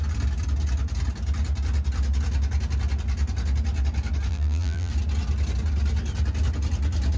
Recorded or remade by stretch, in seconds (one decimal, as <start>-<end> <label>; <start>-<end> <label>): 0.0-4.3 recorded; 4.3-4.9 remade; 4.9-7.2 recorded